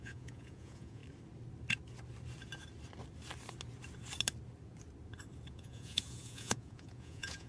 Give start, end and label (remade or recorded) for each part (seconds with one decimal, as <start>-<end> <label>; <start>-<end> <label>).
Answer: 0.0-1.0 remade; 1.0-5.5 recorded; 5.5-7.5 remade